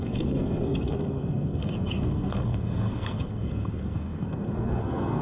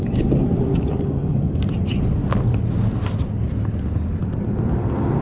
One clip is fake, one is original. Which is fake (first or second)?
first